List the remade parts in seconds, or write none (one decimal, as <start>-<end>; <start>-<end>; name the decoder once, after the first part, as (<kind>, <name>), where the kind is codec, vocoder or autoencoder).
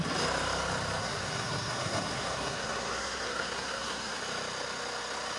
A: 1.0-4.2 (codec, SNAC)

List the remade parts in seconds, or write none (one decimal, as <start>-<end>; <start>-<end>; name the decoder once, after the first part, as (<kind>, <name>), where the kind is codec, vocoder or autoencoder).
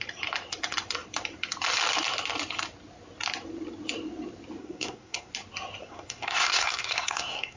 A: 4.6-5.3 (codec, SNAC); 5.8-7.6